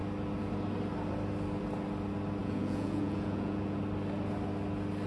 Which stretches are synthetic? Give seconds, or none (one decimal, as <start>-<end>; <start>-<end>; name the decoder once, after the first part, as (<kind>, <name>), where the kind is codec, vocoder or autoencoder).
2.4-3.8 (vocoder, Vocos)